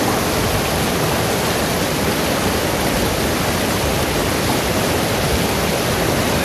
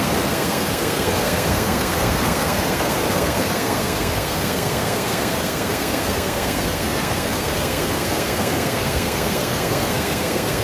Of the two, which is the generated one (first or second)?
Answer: second